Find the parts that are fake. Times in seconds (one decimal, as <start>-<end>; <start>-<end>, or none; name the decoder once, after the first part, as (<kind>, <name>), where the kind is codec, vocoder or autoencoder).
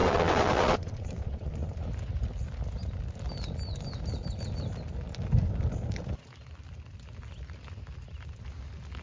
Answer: 0.0-1.5 (vocoder, WaveNeXt)